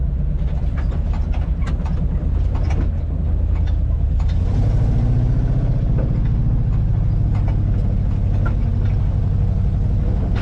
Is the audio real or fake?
real